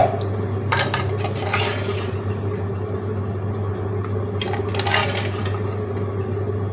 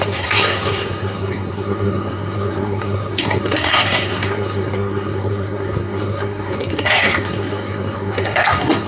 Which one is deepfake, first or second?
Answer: second